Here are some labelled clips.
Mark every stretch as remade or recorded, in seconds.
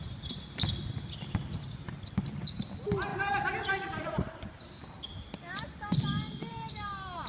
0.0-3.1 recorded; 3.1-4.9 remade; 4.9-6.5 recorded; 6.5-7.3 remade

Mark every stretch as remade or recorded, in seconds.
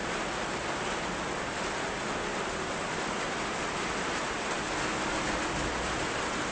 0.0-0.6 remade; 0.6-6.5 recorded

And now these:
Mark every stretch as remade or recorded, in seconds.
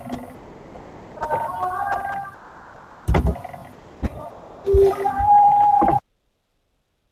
0.0-3.6 recorded; 3.6-5.7 remade; 5.7-7.1 recorded